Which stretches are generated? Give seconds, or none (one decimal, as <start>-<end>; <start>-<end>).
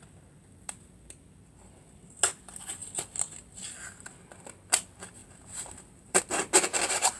5.2-6.2